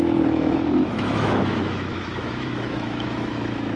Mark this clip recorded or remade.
remade